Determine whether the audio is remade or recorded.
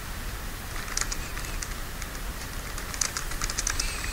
recorded